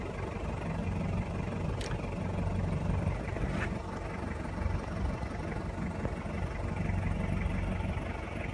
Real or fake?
real